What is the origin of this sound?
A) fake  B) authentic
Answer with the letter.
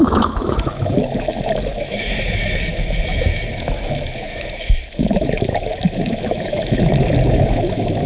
A